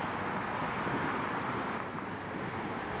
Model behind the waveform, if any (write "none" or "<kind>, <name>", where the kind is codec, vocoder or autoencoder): none